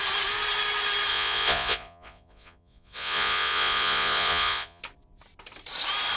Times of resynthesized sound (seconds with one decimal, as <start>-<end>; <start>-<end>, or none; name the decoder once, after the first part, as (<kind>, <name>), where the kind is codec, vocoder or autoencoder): 1.1-4.8 (vocoder, Vocos)